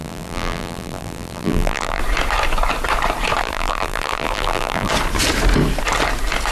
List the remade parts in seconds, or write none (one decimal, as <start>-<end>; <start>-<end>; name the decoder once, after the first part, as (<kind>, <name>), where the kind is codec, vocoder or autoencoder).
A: 0.0-2.0 (vocoder, BigVGAN v2); 3.4-4.9